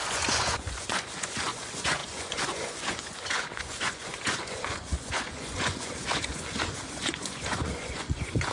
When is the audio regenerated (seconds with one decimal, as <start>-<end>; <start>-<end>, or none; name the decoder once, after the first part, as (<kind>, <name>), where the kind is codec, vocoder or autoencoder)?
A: 0.0-8.5 (vocoder, Vocos)